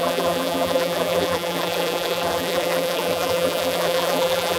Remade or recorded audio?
remade